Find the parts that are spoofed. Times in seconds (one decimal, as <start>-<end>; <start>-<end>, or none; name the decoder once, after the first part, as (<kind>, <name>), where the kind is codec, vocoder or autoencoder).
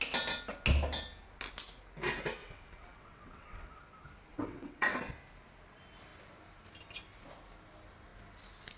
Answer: 2.4-3.8 (vocoder, WaveNeXt); 4.3-5.0